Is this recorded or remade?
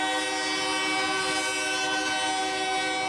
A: recorded